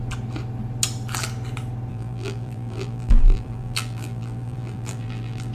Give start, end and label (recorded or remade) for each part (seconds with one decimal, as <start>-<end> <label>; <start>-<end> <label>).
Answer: 0.0-1.9 recorded; 1.9-5.5 remade